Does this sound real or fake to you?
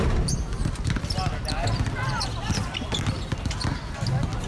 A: real